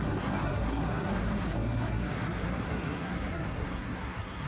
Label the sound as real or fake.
fake